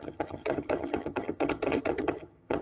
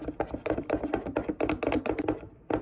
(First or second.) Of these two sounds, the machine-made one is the first